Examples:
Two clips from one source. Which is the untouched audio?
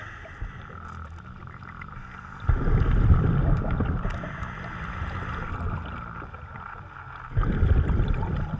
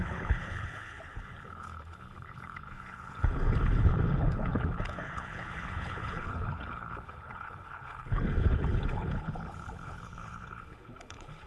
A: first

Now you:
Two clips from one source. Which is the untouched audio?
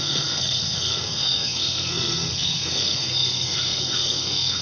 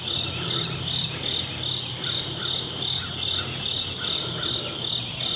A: second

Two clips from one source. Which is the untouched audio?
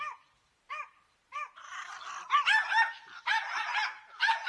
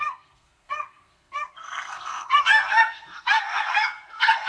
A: first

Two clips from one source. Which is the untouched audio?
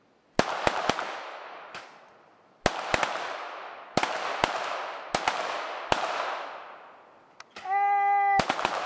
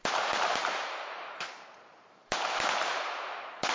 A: first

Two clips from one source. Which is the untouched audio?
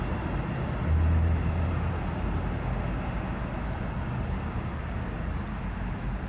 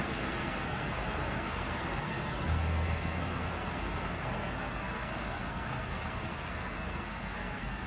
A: first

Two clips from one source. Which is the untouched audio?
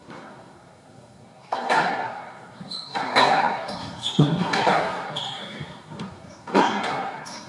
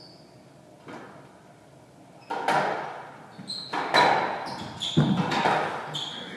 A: second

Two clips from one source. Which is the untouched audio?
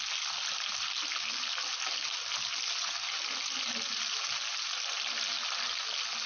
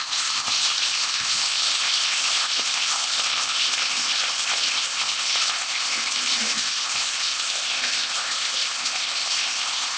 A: first